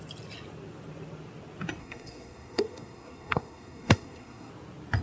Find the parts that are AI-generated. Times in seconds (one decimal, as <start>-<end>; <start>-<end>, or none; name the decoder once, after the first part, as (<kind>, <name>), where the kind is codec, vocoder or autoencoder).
1.8-4.5 (codec, SNAC)